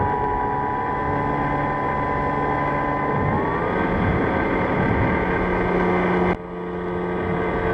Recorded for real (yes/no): yes